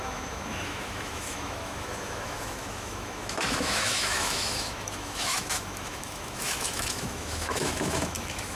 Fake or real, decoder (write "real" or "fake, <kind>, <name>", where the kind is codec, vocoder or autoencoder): fake, autoencoder, DAC-VAE